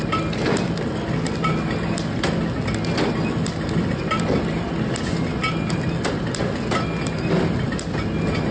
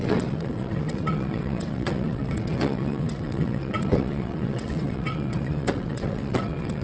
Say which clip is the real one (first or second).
first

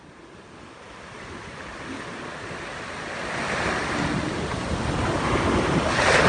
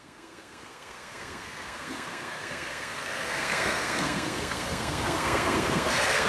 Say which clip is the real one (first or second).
first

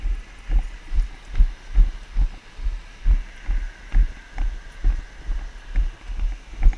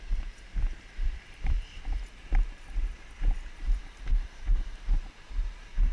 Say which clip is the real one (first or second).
first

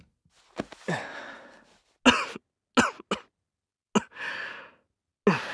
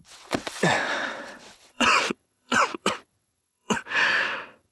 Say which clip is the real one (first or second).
first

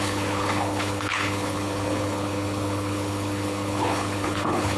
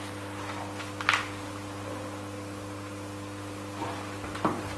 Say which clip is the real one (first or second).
second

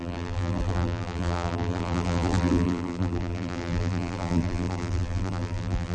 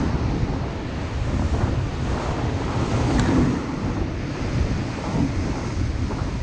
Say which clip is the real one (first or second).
second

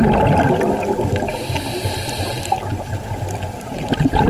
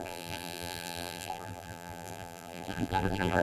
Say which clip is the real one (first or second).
first